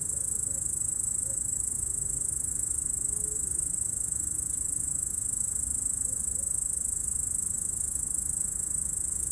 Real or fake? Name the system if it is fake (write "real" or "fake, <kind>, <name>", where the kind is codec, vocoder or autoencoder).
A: fake, autoencoder, DAC-VAE